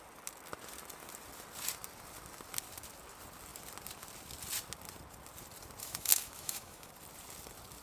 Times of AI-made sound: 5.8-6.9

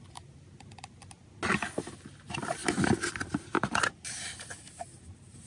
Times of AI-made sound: none

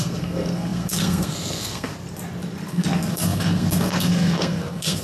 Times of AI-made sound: 0.0-1.9; 2.7-5.0

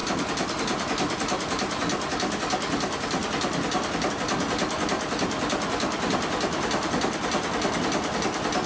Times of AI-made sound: none

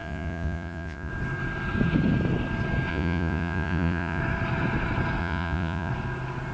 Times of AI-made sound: 0.0-1.1; 2.9-4.2; 5.2-5.9

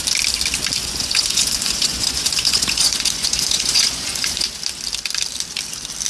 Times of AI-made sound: 0.8-4.5